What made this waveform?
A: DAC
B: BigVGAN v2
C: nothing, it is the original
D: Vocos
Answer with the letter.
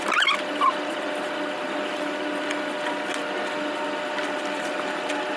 C